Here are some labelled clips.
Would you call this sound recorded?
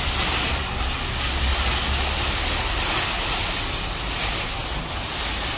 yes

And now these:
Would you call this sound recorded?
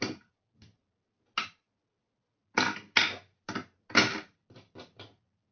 yes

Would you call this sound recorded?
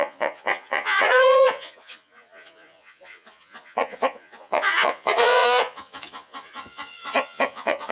no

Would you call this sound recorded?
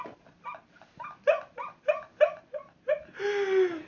yes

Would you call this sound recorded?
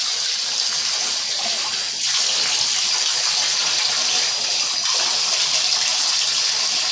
yes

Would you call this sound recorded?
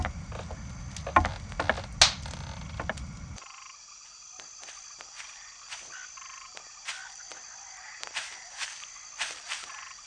yes